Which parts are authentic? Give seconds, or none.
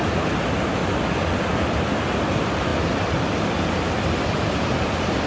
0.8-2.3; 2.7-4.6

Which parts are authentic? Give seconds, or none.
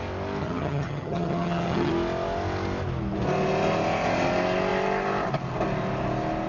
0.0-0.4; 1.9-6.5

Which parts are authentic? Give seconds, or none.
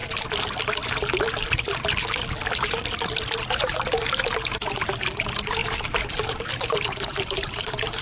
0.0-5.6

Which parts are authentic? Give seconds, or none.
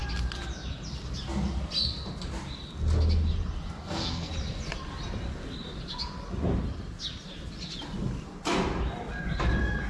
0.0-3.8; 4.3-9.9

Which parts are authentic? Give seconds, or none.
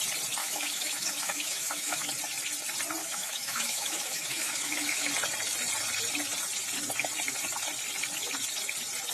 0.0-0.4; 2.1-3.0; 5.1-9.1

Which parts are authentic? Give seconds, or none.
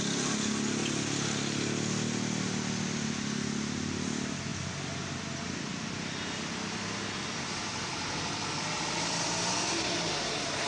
0.0-10.7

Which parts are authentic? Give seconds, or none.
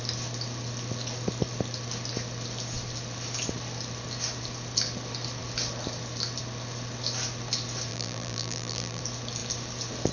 0.0-7.9; 9.0-10.1